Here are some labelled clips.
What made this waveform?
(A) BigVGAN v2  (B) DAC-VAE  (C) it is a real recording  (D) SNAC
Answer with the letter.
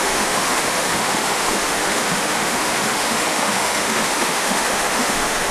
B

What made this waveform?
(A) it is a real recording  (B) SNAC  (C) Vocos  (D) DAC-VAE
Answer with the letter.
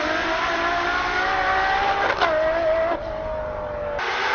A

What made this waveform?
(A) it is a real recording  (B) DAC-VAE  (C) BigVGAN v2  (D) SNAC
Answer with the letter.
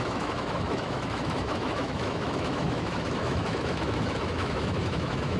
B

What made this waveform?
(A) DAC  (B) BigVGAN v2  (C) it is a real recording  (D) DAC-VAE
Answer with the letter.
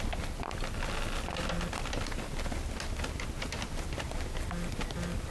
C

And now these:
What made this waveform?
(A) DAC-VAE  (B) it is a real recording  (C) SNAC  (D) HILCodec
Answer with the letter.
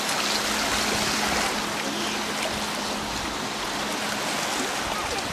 B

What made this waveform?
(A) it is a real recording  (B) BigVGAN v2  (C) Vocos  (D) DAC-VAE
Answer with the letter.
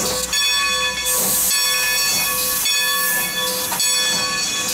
A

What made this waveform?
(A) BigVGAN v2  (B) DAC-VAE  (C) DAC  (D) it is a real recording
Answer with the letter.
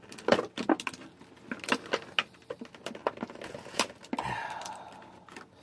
D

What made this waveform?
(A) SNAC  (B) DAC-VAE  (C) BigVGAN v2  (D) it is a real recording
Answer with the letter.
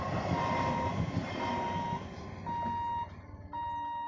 D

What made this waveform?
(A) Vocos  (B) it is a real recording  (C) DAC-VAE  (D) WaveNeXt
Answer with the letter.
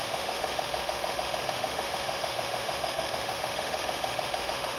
C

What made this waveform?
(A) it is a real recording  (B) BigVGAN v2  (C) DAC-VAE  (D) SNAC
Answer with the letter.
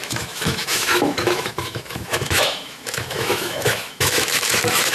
C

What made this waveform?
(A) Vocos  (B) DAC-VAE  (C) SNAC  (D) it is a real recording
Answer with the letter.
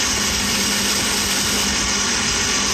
D